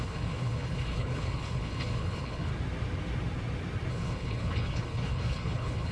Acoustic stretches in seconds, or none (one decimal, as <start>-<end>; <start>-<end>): 2.5-3.9